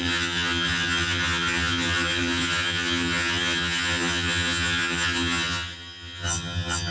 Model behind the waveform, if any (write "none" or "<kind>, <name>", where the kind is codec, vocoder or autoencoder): vocoder, HiFi-GAN